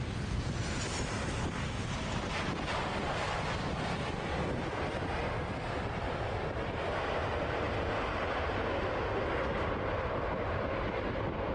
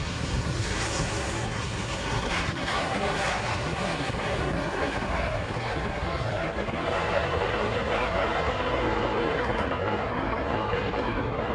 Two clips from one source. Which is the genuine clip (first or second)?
first